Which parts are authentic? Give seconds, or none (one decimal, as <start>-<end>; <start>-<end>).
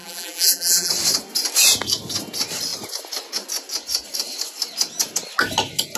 0.9-6.0